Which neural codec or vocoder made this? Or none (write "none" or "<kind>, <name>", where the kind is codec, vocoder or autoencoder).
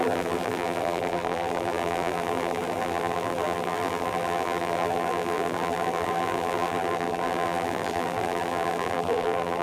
vocoder, BigVGAN v2